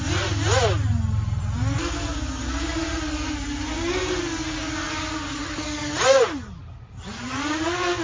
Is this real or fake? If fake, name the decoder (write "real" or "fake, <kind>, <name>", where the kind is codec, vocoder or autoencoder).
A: real